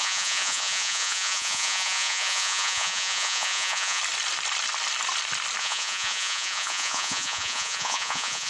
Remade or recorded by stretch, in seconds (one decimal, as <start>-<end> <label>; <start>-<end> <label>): 0.0-4.0 remade; 4.0-5.6 recorded; 5.6-8.5 remade